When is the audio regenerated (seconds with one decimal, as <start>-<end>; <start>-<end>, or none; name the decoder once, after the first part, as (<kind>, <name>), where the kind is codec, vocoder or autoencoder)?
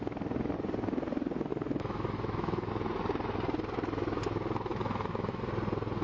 1.5-2.7 (autoencoder, DAC-VAE); 4.7-5.4